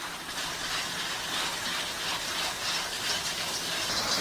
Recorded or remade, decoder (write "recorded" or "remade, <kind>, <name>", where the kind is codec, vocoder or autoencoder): recorded